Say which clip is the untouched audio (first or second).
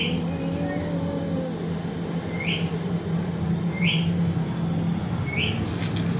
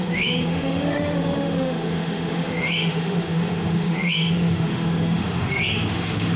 first